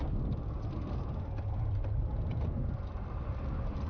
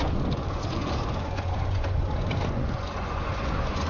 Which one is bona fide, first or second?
first